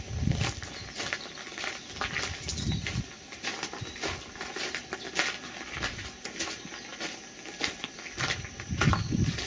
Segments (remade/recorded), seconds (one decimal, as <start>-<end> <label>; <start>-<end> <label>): 0.0-9.5 recorded